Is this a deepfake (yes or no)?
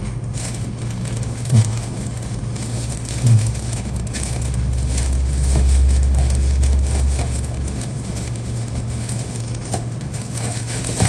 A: yes